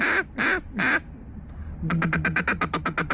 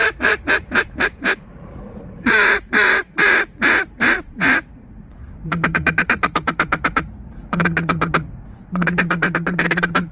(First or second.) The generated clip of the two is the second